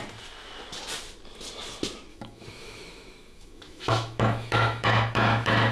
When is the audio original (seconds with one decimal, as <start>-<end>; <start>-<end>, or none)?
0.0-2.1